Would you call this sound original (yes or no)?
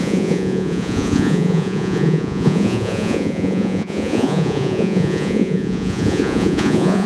no